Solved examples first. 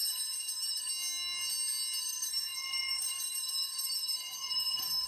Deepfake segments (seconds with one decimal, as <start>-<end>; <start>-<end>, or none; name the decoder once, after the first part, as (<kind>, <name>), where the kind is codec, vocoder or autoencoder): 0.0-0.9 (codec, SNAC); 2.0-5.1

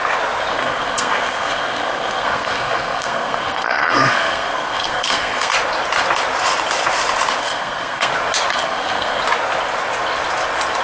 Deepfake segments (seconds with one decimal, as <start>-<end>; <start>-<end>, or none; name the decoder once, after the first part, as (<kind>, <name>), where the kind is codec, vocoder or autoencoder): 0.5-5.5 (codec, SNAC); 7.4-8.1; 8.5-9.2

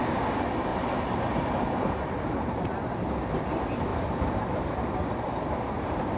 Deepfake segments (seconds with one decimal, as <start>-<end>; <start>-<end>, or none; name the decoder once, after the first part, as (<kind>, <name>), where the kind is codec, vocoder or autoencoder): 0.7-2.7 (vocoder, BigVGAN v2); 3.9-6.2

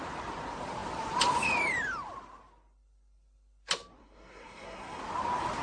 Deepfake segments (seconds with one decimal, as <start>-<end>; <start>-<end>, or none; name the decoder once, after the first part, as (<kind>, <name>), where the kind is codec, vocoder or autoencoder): 4.0-5.0 (codec, SNAC)

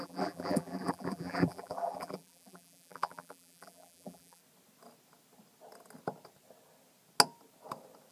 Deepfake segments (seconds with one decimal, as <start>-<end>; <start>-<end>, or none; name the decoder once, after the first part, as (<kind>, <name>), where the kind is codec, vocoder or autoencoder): 0.0-4.4 (vocoder, BigVGAN v2)